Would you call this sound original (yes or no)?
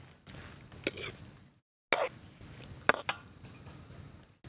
yes